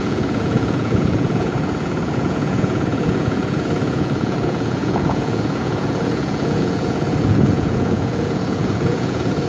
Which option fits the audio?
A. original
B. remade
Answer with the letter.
B